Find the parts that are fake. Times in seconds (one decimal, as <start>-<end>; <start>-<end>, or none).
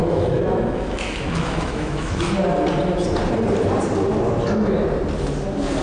0.0-2.3